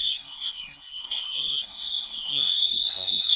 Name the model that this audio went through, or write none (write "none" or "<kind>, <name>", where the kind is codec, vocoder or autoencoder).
codec, SNAC